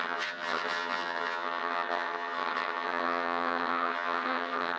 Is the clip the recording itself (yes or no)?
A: no